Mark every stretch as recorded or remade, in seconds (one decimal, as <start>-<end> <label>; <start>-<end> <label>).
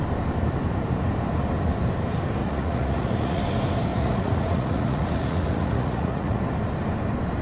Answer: 0.0-2.4 recorded; 2.4-3.4 remade; 3.4-3.9 recorded; 3.9-6.4 remade; 6.4-7.4 recorded